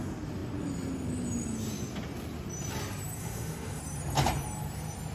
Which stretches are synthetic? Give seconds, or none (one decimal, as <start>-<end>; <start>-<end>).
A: 3.2-3.8